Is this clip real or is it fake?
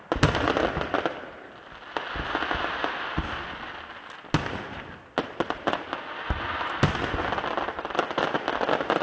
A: real